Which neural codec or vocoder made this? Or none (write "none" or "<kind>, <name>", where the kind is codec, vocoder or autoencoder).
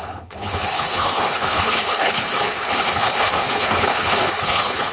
codec, HILCodec